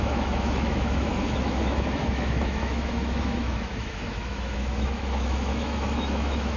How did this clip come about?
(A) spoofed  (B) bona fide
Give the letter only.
A